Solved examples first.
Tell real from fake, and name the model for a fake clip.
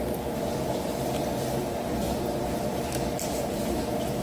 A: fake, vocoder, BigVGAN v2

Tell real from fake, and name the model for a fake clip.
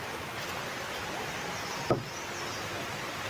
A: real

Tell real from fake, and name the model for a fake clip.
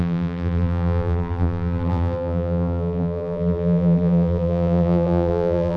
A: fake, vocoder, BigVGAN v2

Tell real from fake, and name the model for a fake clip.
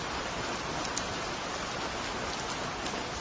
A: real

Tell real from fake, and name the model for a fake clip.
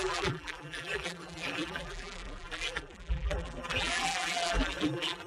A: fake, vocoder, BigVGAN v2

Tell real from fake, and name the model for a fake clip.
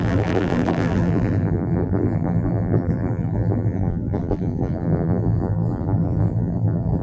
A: fake, vocoder, BigVGAN v2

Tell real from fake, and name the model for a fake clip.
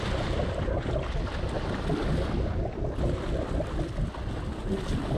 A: real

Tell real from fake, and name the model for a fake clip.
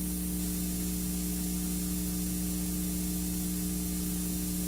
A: real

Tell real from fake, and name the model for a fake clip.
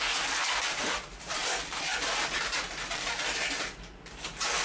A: fake, vocoder, BigVGAN v2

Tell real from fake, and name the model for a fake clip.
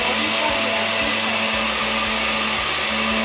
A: real